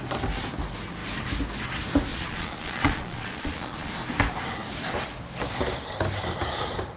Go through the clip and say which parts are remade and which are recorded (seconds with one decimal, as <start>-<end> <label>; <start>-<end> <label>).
0.0-2.1 recorded; 2.1-3.9 remade; 3.9-7.0 recorded